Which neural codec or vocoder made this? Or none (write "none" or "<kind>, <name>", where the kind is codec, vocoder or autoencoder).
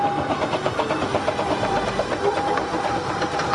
none